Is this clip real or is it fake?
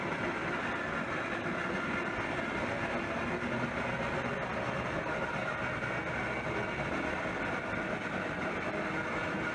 real